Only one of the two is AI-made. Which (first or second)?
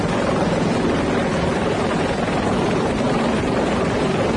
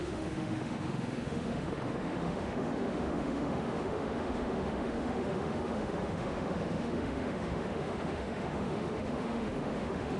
second